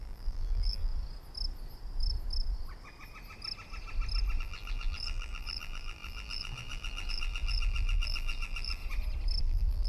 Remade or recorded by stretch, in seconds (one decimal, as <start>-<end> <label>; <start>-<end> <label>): 0.0-0.9 remade; 0.9-4.4 recorded; 4.4-8.8 remade; 8.8-9.4 recorded; 9.4-9.9 remade